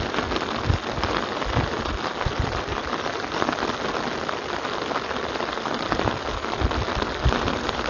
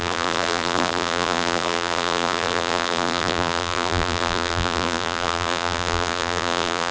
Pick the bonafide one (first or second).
first